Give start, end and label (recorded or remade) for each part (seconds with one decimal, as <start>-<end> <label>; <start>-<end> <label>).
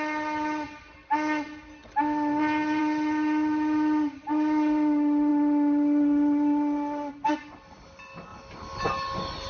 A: 0.0-9.5 recorded